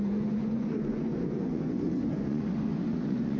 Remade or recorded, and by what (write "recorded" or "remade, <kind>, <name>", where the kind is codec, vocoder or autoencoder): remade, vocoder, Vocos